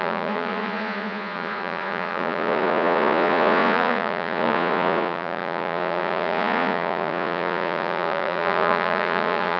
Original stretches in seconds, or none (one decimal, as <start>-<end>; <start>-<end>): none